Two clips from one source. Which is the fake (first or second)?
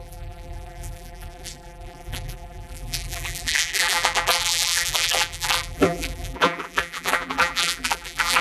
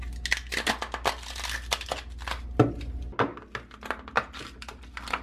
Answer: first